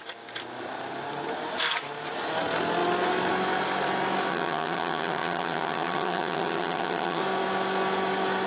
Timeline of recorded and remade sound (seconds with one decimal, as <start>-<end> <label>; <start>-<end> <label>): 0.0-4.3 recorded; 4.3-7.2 remade; 7.2-8.5 recorded